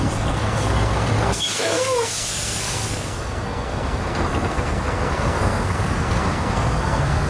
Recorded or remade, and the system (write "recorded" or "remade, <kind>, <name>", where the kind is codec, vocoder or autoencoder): remade, codec, SNAC